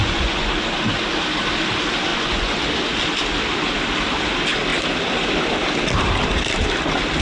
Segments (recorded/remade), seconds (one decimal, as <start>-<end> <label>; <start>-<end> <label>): 0.0-0.5 remade; 0.5-2.1 recorded; 2.1-2.6 remade; 2.6-7.2 recorded

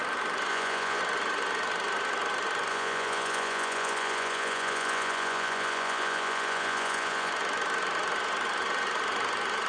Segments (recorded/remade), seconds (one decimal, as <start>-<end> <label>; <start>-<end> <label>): 0.0-0.5 recorded; 0.5-1.0 remade; 1.0-2.7 recorded; 2.7-7.3 remade; 7.3-9.7 recorded

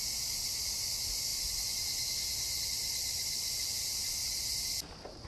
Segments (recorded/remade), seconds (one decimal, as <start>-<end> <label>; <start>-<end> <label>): 0.0-5.3 recorded

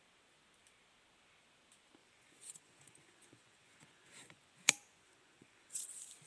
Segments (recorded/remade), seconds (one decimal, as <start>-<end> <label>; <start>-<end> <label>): 0.0-2.0 recorded; 2.0-5.8 remade; 5.8-6.3 recorded